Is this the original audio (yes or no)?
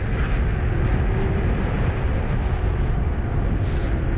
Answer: yes